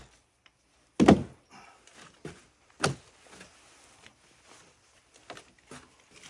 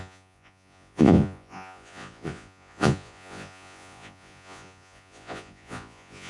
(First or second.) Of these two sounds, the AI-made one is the second